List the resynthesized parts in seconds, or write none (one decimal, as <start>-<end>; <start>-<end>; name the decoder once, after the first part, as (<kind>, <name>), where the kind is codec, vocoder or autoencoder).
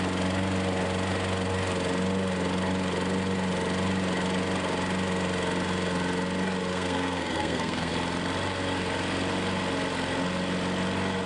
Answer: 6.7-7.9 (codec, SNAC)